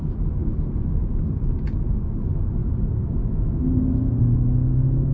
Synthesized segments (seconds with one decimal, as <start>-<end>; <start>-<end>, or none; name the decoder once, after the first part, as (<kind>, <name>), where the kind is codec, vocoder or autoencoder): 0.4-1.1 (vocoder, BigVGAN v2); 2.6-3.2